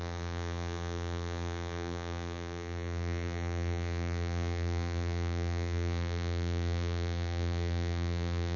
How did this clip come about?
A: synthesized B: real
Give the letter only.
A